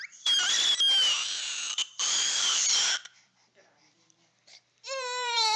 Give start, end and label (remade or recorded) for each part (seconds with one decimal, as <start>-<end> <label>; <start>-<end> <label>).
0.0-0.7 remade; 0.7-1.8 recorded; 1.8-5.6 remade